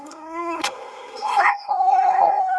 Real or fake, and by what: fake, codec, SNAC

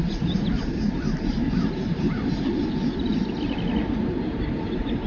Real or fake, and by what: real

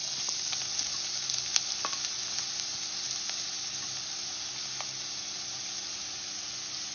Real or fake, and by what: real